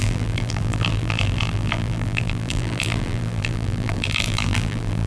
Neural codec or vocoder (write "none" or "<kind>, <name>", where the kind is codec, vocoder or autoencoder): vocoder, BigVGAN v2